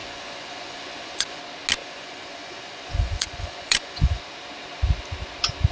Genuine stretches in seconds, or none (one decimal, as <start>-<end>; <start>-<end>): 1.4-1.8; 4.2-5.7